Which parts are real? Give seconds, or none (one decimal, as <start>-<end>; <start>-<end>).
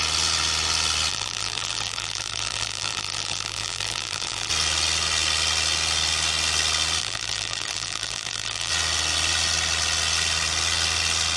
0.0-1.1; 4.5-7.0; 8.7-11.4